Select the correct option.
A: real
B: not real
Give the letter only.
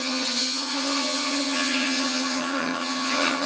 B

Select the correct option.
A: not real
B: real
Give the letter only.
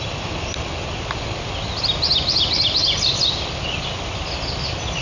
B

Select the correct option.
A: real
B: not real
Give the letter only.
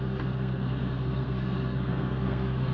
B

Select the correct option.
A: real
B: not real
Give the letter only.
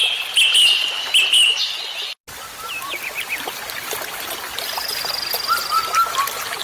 A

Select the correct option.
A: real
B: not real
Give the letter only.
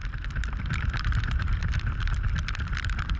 B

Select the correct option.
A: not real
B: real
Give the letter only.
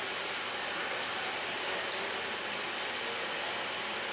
B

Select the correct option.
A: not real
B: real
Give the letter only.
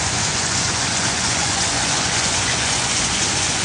A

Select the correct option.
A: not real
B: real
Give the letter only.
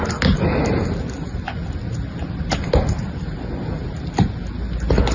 B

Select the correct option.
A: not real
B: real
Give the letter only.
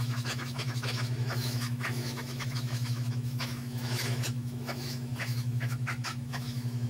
A